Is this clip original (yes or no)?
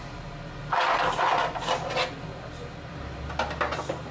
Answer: yes